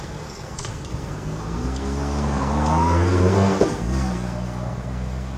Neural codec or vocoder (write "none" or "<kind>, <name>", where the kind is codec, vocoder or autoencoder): codec, SNAC